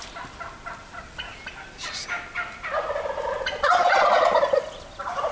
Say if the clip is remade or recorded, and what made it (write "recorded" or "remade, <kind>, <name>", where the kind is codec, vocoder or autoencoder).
recorded